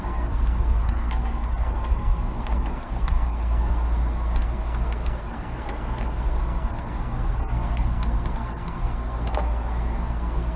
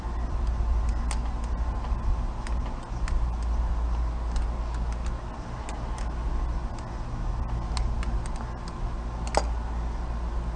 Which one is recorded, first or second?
second